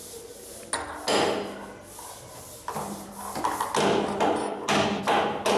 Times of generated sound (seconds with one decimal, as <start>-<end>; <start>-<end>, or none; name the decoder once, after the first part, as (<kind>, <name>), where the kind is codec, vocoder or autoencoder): 4.4-5.0 (codec, DAC)